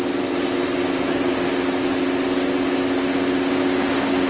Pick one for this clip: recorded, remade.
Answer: recorded